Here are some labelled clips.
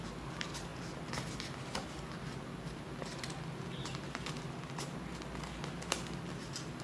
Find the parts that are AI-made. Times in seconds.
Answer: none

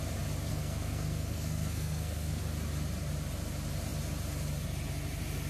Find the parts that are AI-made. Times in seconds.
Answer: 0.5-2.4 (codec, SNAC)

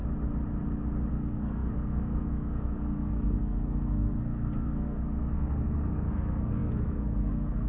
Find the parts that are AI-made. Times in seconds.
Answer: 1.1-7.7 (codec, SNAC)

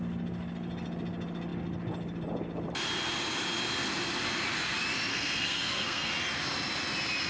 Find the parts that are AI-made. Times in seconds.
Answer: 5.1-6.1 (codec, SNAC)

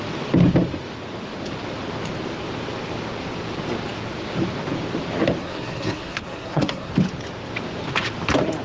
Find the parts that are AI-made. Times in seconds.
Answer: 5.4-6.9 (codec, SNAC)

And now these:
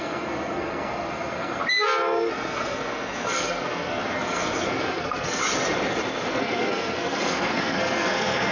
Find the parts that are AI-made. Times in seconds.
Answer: 0.0-1.6 (codec, SNAC); 2.3-5.4; 6.3-8.5

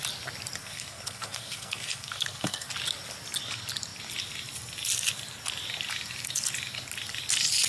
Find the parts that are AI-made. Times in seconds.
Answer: 0.6-2.7 (codec, SNAC)

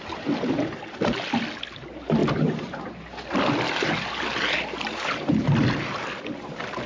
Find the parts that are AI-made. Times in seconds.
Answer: none